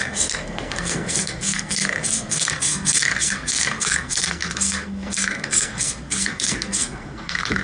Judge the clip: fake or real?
fake